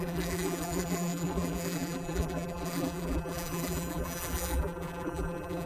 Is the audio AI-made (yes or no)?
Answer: yes